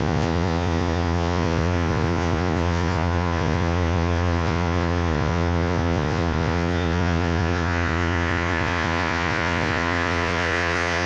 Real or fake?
fake